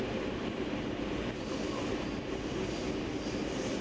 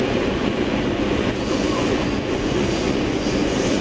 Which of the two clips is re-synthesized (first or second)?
second